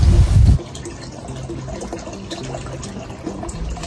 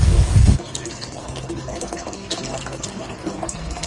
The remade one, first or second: second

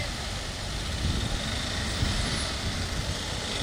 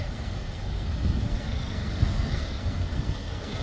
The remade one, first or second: second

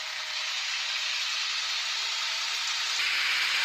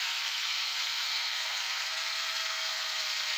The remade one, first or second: second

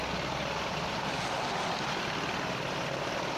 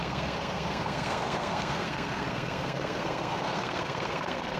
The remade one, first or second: second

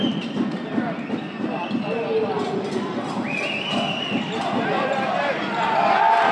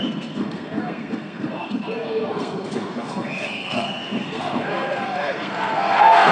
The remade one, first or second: second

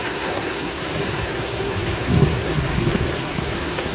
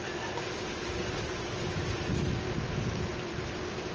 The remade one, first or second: first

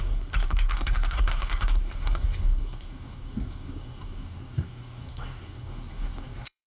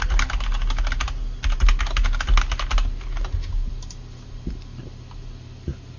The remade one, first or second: first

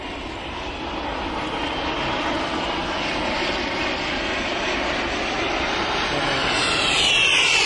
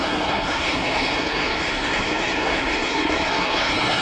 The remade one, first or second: second